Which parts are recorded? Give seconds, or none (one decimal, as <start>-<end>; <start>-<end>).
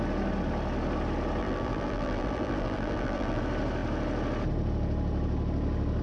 0.0-1.4; 3.4-6.0